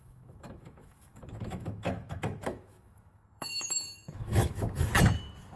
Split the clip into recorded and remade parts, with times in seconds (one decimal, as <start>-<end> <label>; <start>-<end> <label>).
0.0-4.9 remade; 4.9-5.6 recorded